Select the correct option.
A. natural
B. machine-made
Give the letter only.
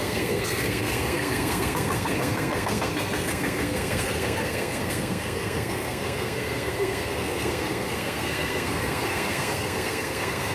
B